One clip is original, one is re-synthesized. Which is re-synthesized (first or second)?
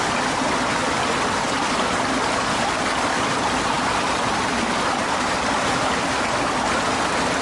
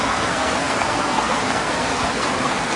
second